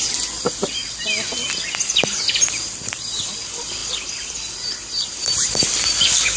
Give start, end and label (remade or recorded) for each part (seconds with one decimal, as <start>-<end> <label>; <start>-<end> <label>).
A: 0.0-0.8 remade; 0.8-2.4 recorded; 2.4-6.4 remade